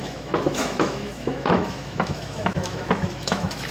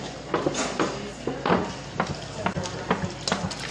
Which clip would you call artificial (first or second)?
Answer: first